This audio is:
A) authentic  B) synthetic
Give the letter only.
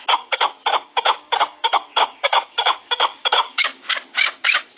B